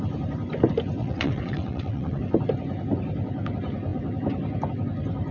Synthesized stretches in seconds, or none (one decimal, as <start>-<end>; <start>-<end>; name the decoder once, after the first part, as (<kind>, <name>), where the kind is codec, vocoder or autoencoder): 1.0-2.2 (vocoder, WaveNeXt)